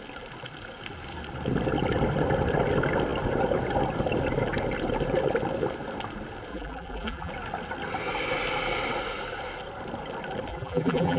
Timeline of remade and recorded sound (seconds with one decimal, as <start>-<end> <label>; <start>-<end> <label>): 0.0-6.5 recorded; 6.5-7.3 remade; 7.3-10.5 recorded; 10.5-11.2 remade